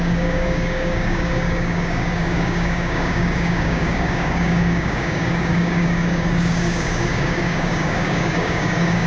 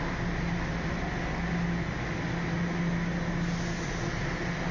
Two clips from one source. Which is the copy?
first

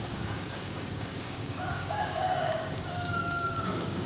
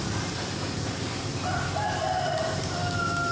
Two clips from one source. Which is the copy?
first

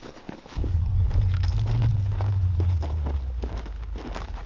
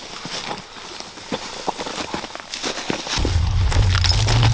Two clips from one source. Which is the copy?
first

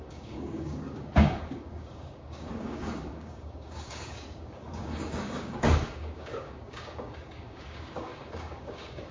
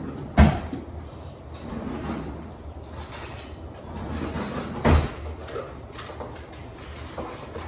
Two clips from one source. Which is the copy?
first